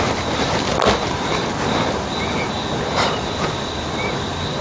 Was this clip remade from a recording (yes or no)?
no